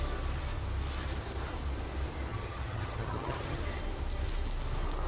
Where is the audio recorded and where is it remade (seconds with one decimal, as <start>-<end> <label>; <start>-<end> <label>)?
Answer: 0.0-2.3 recorded; 2.3-3.6 remade; 3.6-5.1 recorded